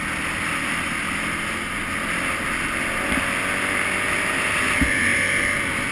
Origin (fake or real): real